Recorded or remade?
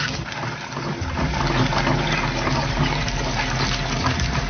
recorded